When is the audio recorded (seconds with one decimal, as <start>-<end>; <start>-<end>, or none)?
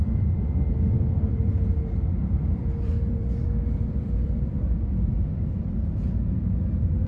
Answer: 0.0-1.3; 5.6-7.1